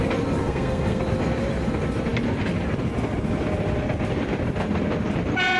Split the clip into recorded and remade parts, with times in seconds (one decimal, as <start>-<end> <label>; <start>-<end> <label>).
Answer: 0.0-0.4 recorded; 0.4-1.0 remade; 1.0-5.6 recorded